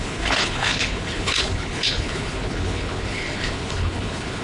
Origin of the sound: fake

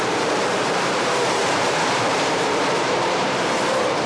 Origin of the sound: fake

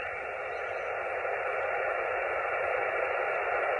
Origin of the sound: real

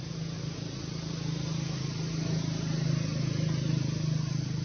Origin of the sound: real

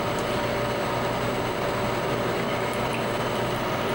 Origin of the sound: real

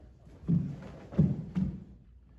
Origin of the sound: real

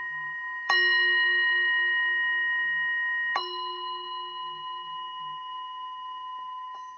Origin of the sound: fake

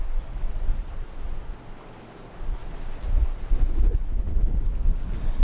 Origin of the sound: real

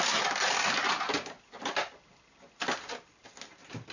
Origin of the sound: real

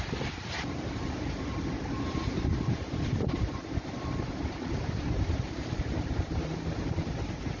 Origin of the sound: fake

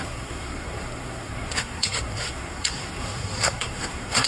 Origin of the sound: fake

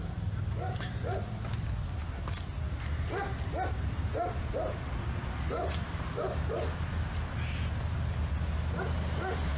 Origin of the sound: real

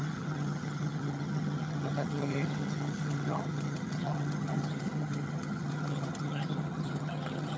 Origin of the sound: fake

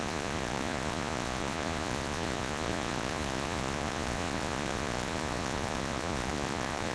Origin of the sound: fake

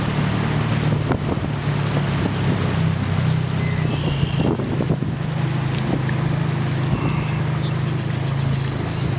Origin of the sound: real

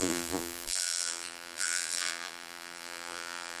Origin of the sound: fake